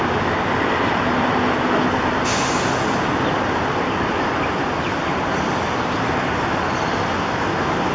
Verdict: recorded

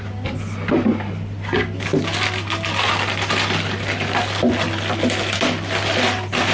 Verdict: recorded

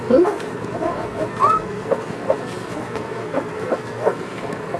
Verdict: remade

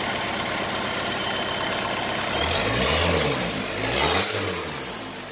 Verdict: recorded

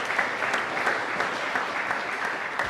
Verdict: recorded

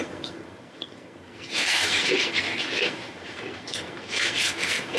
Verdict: remade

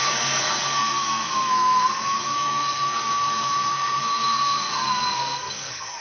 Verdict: remade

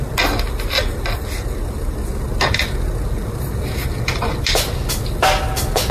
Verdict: recorded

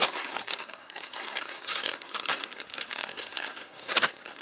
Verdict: remade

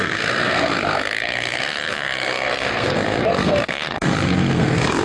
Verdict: remade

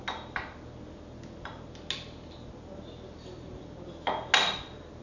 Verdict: recorded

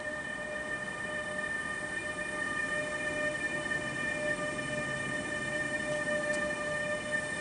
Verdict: recorded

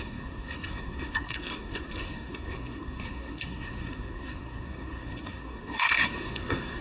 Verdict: remade